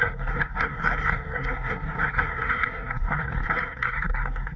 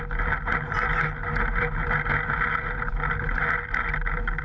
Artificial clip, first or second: first